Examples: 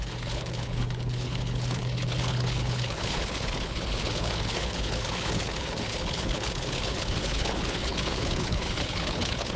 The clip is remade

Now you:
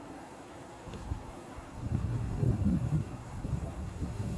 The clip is remade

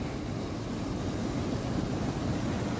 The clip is recorded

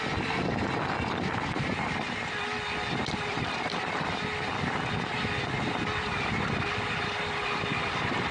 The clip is recorded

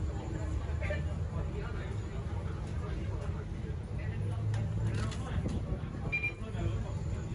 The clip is recorded